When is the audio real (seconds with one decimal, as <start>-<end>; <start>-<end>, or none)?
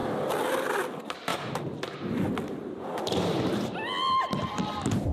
0.0-5.1